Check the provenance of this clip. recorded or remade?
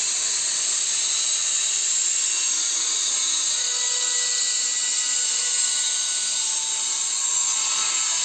recorded